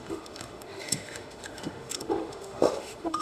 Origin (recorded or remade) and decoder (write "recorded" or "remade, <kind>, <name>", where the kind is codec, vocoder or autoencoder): remade, autoencoder, DAC-VAE